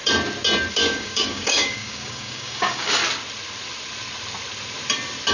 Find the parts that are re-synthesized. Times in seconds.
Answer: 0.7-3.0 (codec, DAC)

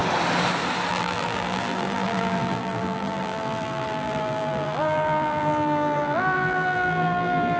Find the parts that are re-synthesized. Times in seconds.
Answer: 0.9-7.6 (vocoder, BigVGAN v2)

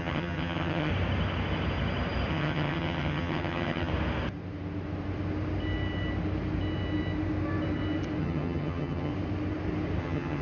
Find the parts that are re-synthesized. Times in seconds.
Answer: 0.0-0.9 (vocoder, HiFi-GAN); 2.3-3.9; 8.2-9.1; 10.0-10.4

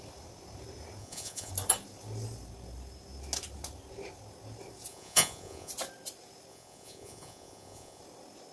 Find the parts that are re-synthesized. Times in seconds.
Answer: 1.0-1.5 (vocoder, Vocos); 4.9-5.7; 6.5-8.0

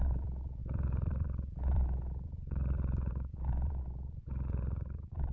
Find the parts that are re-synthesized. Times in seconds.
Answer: 0.0-5.3 (vocoder, Vocos)

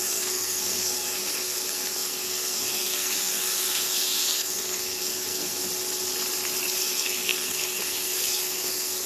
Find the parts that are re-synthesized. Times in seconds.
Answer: 0.0-5.6 (codec, SNAC); 6.8-9.1